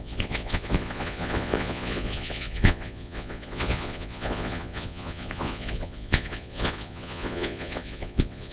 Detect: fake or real fake